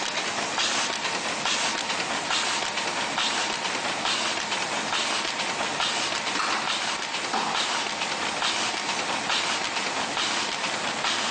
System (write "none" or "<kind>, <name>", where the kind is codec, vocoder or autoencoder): none